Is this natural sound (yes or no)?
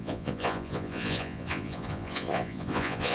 no